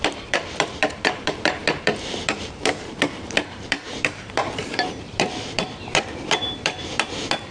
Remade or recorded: remade